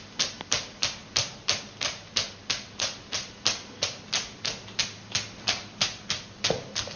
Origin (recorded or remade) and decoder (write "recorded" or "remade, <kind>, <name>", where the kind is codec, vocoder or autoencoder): recorded